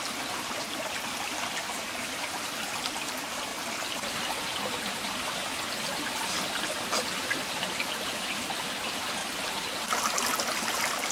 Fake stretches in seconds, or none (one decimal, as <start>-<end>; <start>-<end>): 9.2-9.7